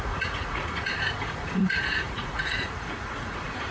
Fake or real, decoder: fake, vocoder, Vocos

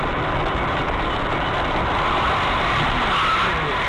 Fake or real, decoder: real